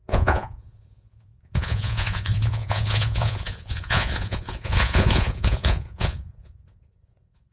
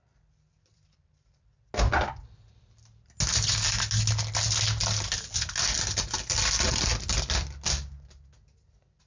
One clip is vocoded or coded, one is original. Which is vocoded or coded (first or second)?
first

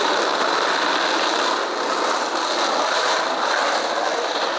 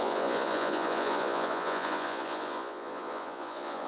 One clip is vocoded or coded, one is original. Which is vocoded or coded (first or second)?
second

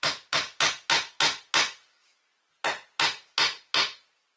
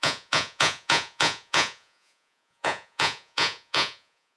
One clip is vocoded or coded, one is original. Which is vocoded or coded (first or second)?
second